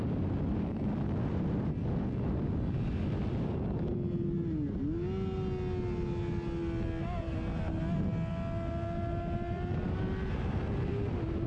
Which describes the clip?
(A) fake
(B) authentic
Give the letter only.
B